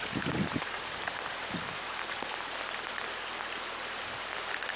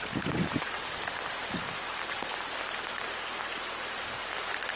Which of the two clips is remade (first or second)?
second